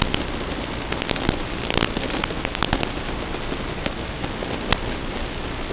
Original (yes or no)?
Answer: yes